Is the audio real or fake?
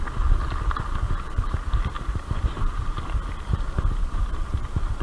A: real